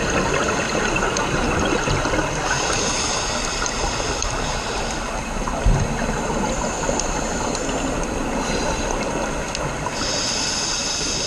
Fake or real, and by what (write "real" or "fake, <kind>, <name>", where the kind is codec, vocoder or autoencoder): real